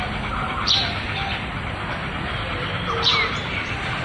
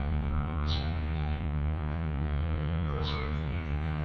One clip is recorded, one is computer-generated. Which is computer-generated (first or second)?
second